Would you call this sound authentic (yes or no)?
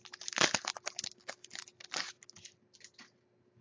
yes